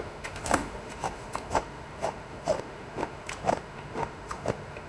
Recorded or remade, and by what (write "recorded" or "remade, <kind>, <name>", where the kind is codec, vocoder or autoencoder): remade, autoencoder, DAC-VAE